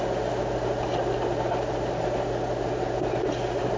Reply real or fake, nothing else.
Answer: real